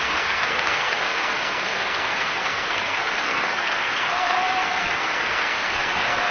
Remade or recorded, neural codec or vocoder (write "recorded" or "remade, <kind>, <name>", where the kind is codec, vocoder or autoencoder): remade, codec, SNAC